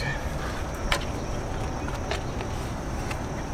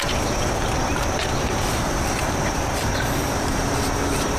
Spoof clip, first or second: second